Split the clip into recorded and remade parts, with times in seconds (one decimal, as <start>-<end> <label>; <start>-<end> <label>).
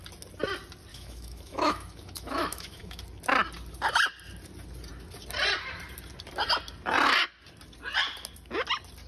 0.0-0.9 recorded; 0.9-3.0 remade; 3.0-9.1 recorded